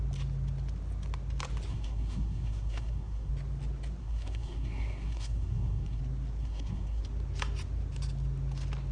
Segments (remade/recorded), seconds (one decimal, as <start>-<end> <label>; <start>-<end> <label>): 0.0-1.7 recorded; 1.7-3.3 remade; 3.3-4.0 recorded; 4.0-6.0 remade; 6.0-6.4 recorded; 6.4-7.0 remade; 7.0-8.9 recorded